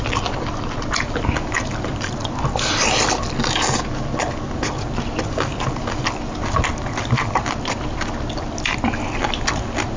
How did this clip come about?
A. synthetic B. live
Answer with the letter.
B